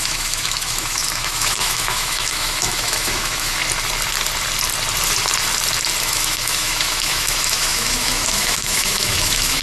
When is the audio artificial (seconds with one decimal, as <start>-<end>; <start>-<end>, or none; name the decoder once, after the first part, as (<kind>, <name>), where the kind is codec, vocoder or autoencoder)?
0.0-3.6 (autoencoder, DAC-VAE); 6.0-9.6